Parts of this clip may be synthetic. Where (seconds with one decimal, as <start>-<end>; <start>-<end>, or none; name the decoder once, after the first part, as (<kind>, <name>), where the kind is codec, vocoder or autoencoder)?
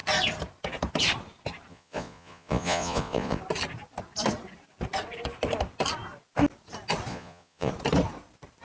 1.7-3.4 (vocoder, Vocos); 7.1-7.7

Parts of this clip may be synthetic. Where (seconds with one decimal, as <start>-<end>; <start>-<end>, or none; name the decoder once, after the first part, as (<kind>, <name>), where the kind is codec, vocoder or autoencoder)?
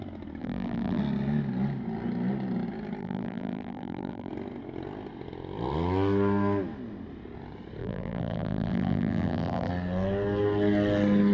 0.4-1.0 (vocoder, BigVGAN v2); 3.0-4.3; 7.8-9.7